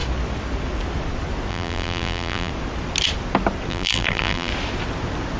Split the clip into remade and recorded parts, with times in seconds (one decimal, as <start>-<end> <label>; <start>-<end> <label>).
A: 0.0-1.5 recorded; 1.5-2.5 remade; 2.5-3.7 recorded; 3.7-4.5 remade; 4.5-5.4 recorded